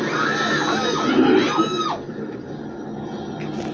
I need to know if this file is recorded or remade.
recorded